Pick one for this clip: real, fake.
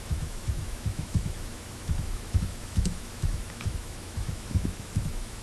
fake